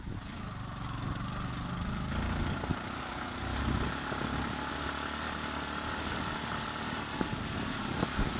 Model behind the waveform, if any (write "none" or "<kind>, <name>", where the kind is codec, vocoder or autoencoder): none